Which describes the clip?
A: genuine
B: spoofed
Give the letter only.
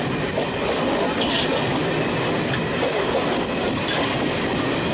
A